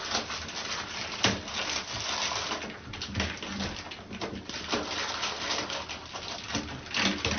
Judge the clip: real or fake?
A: real